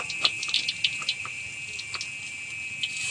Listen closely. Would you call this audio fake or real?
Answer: real